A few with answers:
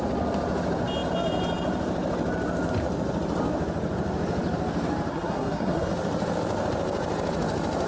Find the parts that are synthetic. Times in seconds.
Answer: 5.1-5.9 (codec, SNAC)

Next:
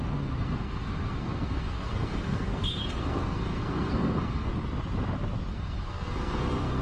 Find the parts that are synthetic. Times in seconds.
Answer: 0.0-4.5 (codec, SNAC); 5.5-6.8

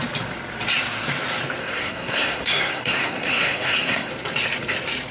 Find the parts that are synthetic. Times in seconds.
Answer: 1.6-4.1 (codec, SNAC)

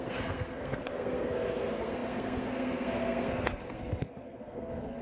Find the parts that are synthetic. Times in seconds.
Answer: 0.0-5.0 (codec, SNAC)

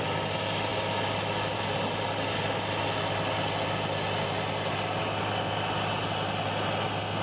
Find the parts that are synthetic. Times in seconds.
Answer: none